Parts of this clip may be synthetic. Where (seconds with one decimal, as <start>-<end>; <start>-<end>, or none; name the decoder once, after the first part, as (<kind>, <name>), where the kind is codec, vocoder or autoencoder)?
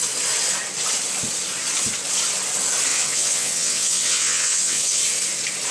2.9-5.0 (vocoder, WaveNeXt)